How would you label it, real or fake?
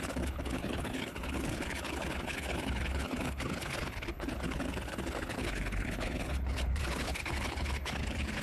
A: fake